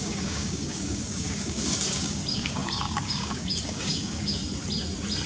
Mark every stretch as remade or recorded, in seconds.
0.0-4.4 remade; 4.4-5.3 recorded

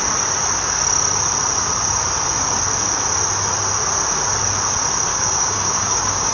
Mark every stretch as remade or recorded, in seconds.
0.0-5.1 recorded; 5.1-6.3 remade

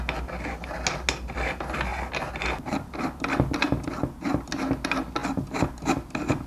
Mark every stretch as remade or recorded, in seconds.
0.0-6.5 recorded

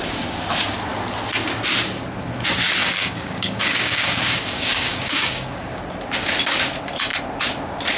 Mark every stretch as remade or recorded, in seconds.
0.0-2.8 recorded; 2.8-5.8 remade; 5.8-8.0 recorded

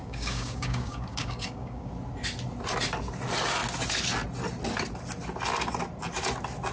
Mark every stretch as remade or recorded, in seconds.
0.0-1.9 remade; 1.9-6.7 recorded

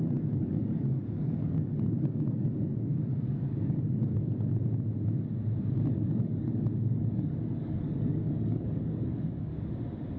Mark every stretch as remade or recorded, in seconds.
0.0-4.5 remade; 4.5-5.6 recorded; 5.6-9.5 remade; 9.5-10.2 recorded